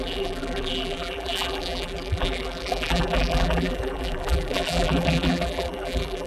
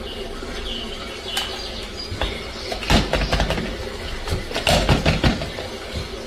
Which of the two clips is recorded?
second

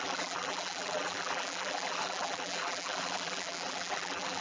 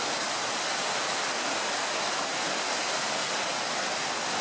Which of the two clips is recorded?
second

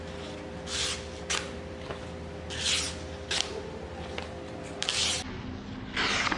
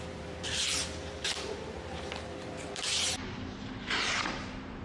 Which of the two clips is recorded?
first